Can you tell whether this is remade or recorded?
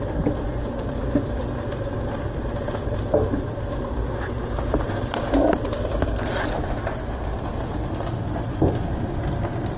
remade